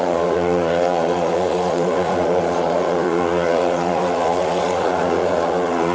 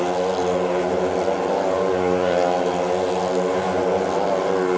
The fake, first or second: first